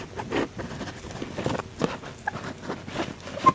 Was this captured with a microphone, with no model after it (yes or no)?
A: no